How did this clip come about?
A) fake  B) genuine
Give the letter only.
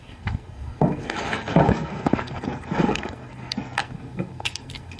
A